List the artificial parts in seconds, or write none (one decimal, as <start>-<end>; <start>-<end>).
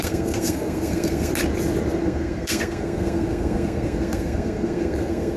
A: 0.0-1.3; 2.0-5.4